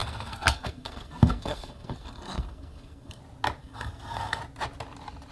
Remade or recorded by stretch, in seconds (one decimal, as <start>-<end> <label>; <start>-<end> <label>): 0.0-3.2 remade; 3.2-3.6 recorded; 3.6-4.4 remade; 4.4-5.3 recorded